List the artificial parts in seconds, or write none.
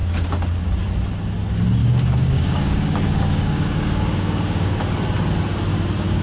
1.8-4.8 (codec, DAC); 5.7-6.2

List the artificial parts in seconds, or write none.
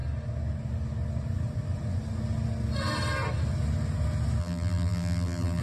4.4-5.6 (vocoder, BigVGAN v2)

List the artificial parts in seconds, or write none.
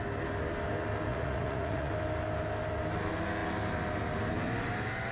1.1-1.9 (vocoder, Vocos)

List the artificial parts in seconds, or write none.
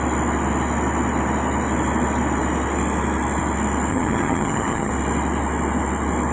3.9-4.9 (vocoder, HiFi-GAN)